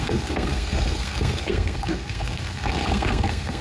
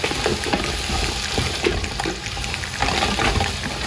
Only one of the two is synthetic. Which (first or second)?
first